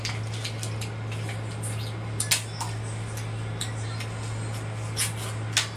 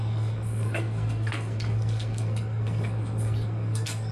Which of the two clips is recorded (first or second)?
first